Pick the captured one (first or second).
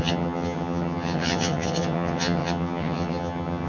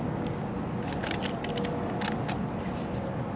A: second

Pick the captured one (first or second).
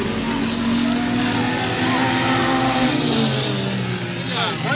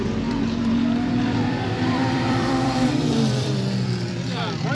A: first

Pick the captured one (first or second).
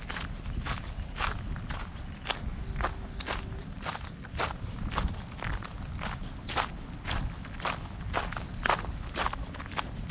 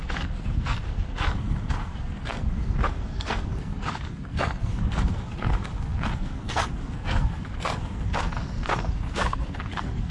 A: first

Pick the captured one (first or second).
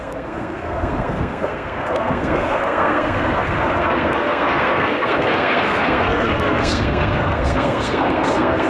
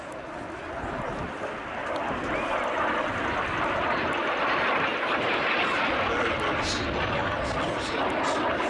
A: second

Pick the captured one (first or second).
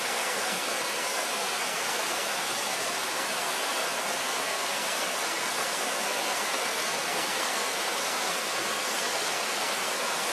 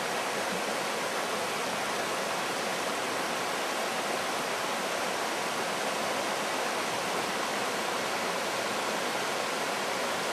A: second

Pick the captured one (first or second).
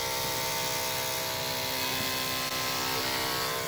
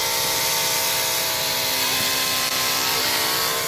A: first